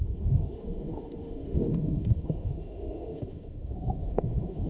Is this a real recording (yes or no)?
no